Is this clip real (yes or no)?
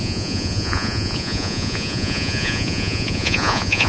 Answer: no